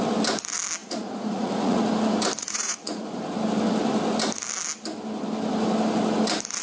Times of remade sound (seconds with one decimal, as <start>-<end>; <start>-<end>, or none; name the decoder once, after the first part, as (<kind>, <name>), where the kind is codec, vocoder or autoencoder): 0.8-1.8 (vocoder, Vocos); 2.4-3.2